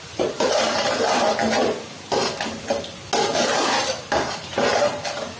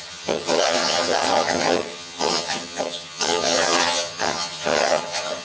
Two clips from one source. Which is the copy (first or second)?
second